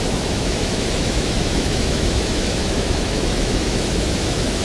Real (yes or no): no